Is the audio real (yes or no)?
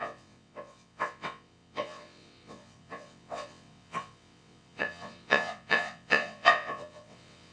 no